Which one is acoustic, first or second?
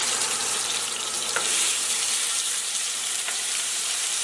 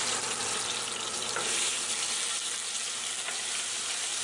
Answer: second